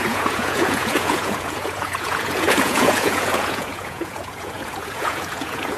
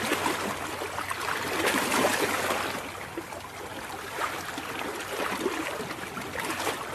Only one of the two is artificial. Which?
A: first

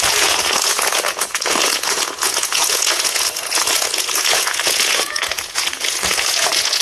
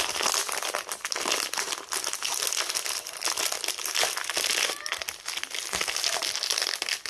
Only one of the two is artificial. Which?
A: first